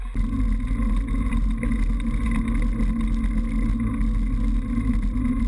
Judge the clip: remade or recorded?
recorded